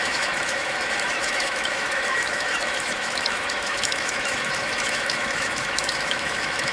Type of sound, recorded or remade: remade